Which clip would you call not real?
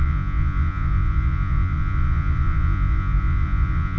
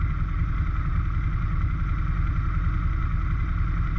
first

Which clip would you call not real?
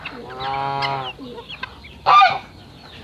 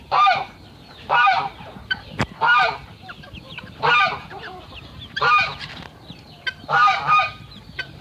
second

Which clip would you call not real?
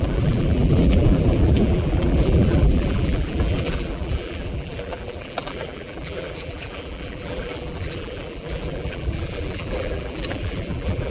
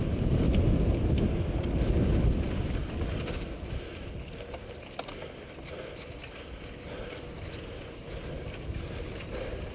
first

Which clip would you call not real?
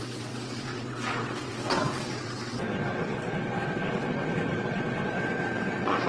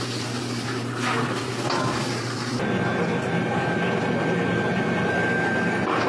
first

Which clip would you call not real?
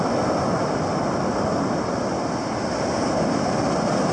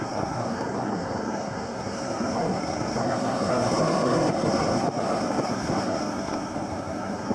second